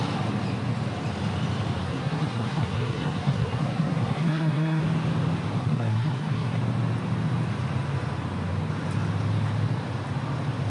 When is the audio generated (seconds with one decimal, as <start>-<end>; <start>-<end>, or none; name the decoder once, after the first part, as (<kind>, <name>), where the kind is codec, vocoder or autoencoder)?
1.8-4.8 (codec, SNAC); 5.6-6.6